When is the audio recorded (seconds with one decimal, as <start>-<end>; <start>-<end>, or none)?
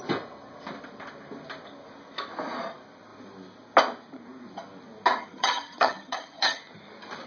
0.0-5.2; 6.6-7.3